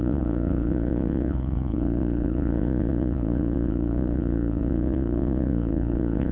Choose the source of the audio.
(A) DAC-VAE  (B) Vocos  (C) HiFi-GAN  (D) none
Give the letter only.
B